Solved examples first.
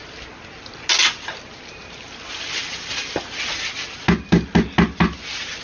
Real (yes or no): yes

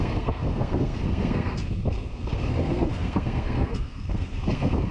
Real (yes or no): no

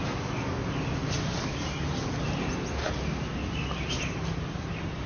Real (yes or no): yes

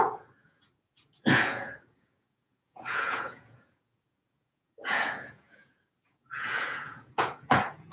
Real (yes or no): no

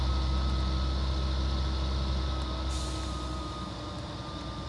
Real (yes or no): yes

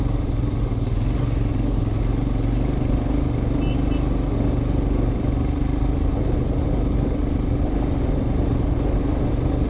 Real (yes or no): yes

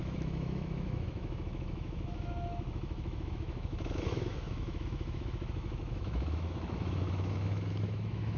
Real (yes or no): no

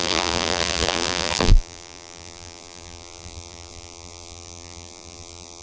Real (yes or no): no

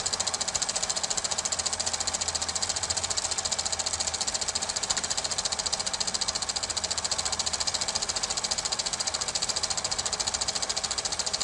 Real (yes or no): yes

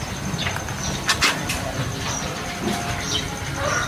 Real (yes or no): yes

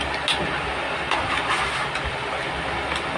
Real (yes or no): yes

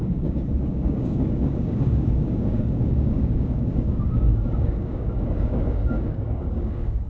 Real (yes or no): no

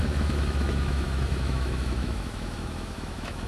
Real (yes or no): no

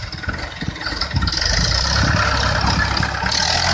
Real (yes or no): yes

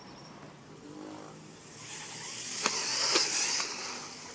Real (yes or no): yes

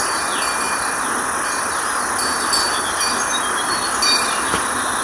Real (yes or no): yes